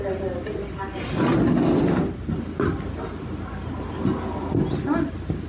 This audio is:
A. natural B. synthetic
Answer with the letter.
A